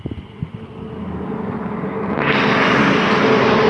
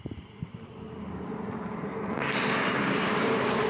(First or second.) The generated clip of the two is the second